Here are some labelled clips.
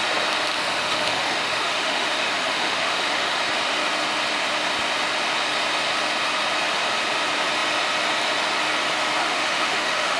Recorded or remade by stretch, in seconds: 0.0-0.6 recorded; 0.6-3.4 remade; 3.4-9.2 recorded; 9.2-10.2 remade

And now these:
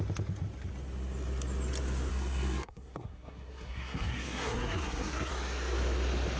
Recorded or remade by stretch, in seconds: 0.0-2.1 recorded; 2.1-5.3 remade; 5.3-6.4 recorded